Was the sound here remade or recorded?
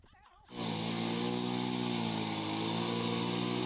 recorded